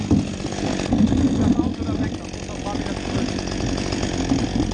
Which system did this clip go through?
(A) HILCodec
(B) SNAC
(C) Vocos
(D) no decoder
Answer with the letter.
D